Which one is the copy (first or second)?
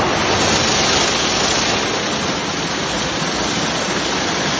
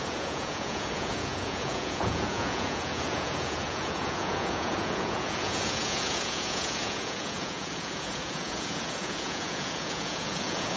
second